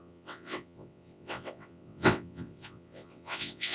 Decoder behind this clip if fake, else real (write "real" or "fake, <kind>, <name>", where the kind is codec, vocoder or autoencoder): fake, vocoder, WaveNeXt